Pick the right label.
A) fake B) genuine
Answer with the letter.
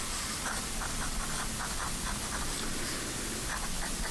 B